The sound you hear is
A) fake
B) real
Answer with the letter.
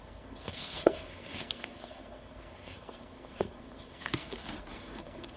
A